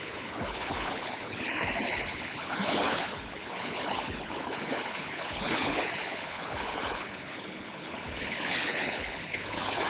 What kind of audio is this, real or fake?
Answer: fake